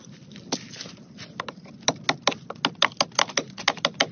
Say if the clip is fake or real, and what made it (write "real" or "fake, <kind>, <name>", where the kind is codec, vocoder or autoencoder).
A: real